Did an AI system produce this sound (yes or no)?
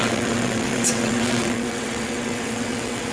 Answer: yes